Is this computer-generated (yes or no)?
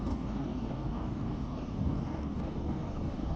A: yes